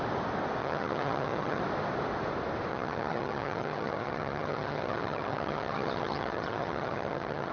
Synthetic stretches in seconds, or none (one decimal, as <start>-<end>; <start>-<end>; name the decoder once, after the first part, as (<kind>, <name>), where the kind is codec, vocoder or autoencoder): 0.6-1.6 (vocoder, HiFi-GAN); 2.7-7.5